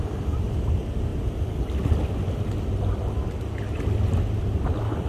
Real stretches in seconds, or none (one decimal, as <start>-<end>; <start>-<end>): 0.0-5.1